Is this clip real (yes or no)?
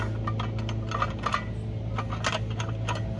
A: yes